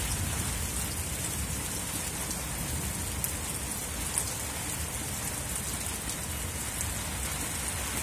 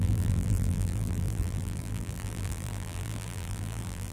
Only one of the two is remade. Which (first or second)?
second